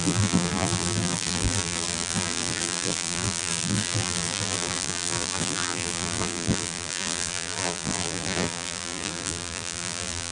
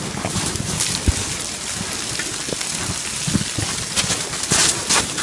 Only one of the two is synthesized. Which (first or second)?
first